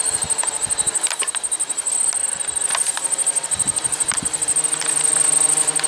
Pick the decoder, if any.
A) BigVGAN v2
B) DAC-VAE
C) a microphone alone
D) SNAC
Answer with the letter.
C